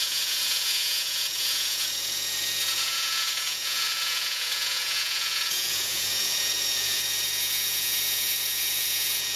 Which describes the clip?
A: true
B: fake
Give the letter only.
B